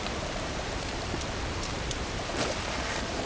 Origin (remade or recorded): remade